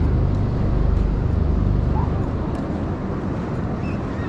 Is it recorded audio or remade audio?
recorded